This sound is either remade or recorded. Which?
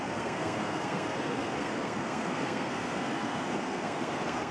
remade